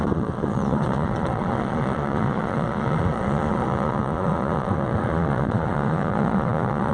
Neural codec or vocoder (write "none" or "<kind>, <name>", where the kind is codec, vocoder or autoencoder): vocoder, Vocos